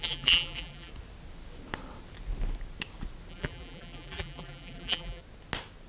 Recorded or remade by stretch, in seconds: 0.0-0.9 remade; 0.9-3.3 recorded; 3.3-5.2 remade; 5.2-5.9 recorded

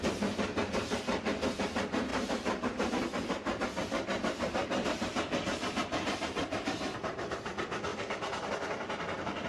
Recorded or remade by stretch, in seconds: 0.0-2.1 recorded; 2.1-2.9 remade; 2.9-4.1 recorded; 4.1-7.5 remade; 7.5-7.9 recorded; 7.9-8.5 remade; 8.5-9.5 recorded

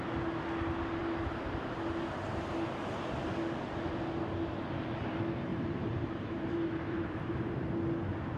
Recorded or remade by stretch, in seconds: 0.0-5.5 recorded; 5.5-7.8 remade; 7.8-8.4 recorded

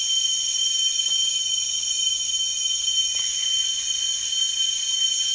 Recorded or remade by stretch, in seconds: 0.0-2.5 remade; 2.5-5.3 recorded

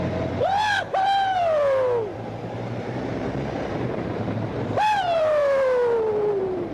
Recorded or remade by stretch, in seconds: 0.0-5.4 remade; 5.4-6.3 recorded; 6.3-6.7 remade

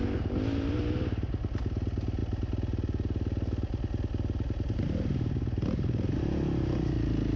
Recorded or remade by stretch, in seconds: 0.0-7.4 recorded

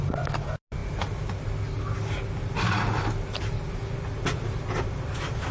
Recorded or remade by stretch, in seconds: 0.0-5.5 recorded